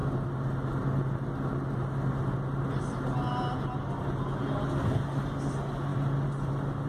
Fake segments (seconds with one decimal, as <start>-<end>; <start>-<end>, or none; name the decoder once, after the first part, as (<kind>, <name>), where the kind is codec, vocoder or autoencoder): none